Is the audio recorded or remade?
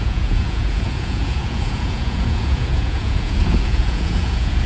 remade